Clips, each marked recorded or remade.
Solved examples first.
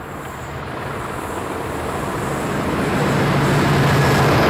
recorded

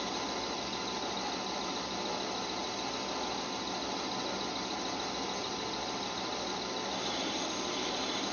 recorded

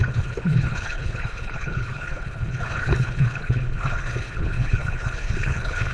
remade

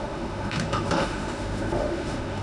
remade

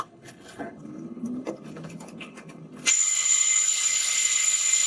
remade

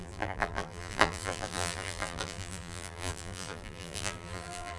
remade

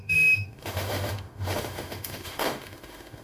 remade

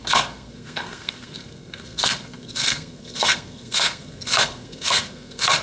remade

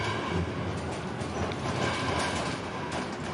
recorded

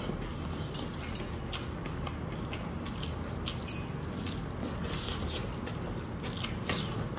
recorded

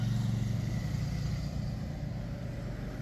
recorded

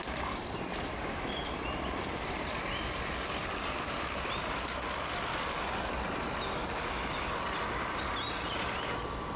recorded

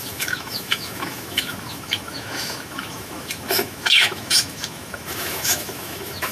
remade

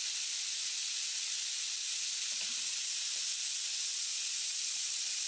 recorded